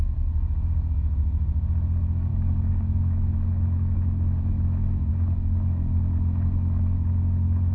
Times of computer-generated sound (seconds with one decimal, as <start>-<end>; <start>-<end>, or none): 2.3-5.1